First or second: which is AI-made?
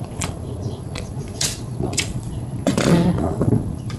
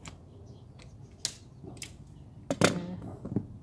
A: first